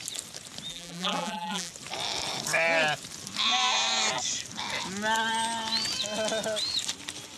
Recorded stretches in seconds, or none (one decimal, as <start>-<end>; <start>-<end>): 0.0-0.7; 1.7-7.4